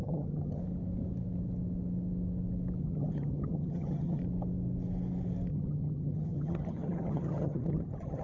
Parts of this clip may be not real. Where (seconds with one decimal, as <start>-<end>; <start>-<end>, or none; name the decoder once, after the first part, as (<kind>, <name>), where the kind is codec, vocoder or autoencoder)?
0.0-0.6 (vocoder, HiFi-GAN); 2.8-4.2; 5.5-8.2